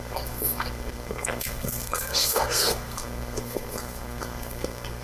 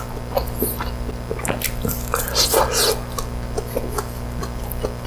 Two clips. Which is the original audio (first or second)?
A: second